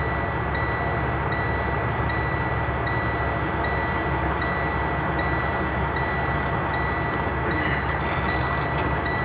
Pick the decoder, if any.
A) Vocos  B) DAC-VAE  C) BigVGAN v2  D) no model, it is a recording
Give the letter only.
D